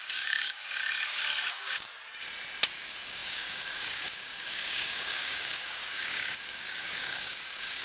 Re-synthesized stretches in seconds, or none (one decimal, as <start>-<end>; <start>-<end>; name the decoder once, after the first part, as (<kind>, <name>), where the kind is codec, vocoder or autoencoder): 0.0-0.8 (codec, DAC); 1.5-1.9; 2.6-7.8